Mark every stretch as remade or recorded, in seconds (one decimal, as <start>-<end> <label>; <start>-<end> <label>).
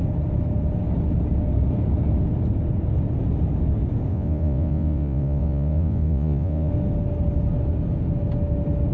0.0-4.1 recorded; 4.1-6.7 remade; 6.7-8.9 recorded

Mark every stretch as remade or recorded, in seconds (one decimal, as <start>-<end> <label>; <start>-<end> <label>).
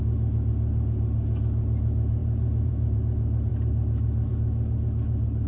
0.0-2.2 recorded; 2.2-3.0 remade; 3.0-5.5 recorded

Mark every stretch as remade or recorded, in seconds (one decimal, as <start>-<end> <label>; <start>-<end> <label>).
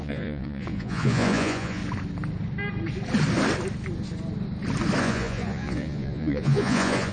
0.0-1.8 remade; 1.8-5.0 recorded; 5.0-7.1 remade